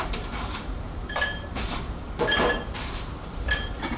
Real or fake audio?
fake